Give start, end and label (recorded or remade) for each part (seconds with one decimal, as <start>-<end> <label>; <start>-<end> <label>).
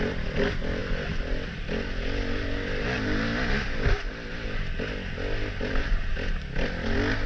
0.0-7.3 recorded